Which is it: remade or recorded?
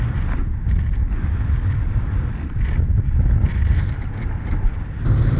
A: recorded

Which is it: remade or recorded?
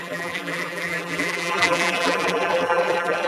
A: remade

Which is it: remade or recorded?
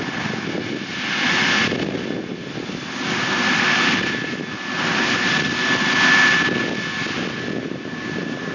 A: recorded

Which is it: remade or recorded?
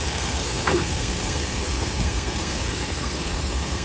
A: remade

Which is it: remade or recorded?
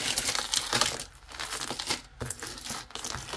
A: recorded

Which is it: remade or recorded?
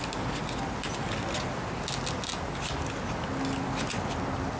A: recorded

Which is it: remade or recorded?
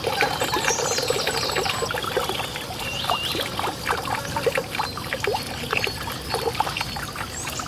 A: recorded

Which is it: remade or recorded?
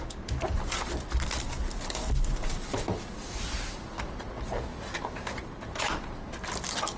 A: recorded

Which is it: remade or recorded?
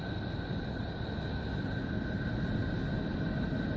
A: recorded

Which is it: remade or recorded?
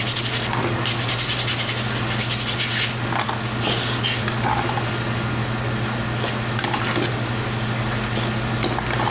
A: recorded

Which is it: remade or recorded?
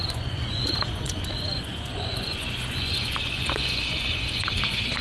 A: remade